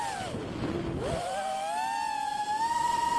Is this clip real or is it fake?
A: real